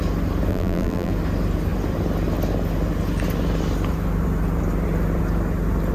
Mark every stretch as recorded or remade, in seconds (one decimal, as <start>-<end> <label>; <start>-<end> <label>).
0.0-0.5 recorded; 0.5-1.1 remade; 1.1-5.9 recorded